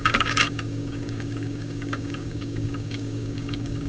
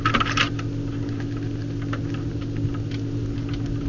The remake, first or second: first